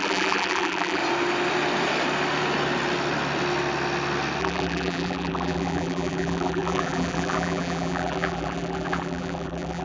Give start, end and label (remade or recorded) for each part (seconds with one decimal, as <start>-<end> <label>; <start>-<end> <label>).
0.0-1.0 remade; 1.0-4.4 recorded; 4.4-9.8 remade